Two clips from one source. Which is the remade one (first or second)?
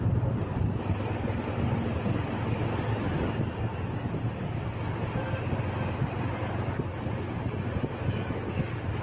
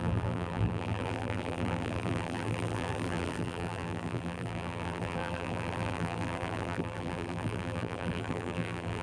second